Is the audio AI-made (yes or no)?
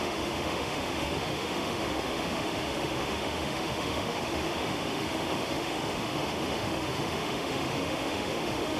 yes